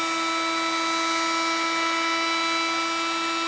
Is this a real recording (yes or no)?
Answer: yes